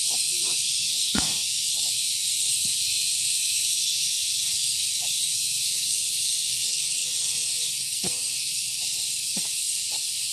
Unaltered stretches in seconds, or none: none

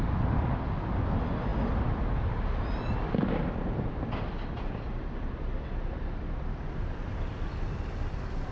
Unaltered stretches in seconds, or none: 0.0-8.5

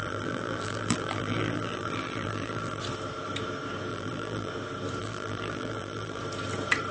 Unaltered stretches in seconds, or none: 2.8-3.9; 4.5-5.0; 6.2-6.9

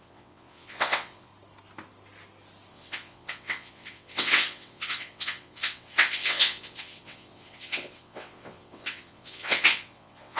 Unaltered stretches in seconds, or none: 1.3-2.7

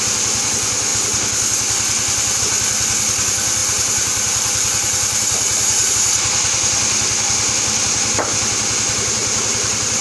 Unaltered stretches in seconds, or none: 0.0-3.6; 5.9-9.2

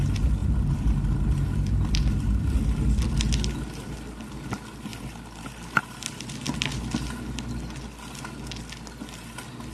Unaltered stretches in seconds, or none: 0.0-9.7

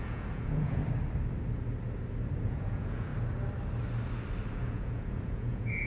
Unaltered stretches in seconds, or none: 0.8-2.4; 3.1-4.5

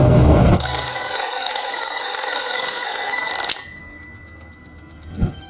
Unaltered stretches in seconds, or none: 3.3-3.8